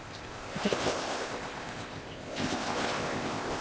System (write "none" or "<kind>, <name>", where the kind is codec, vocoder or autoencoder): codec, ZipCodec